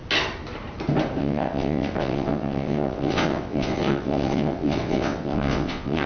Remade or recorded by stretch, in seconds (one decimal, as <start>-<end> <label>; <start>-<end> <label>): 0.0-1.2 recorded; 1.2-6.1 remade